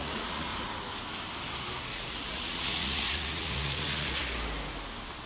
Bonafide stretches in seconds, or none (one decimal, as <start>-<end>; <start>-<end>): 0.5-1.8; 4.2-5.3